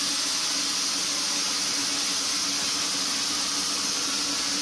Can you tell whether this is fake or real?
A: real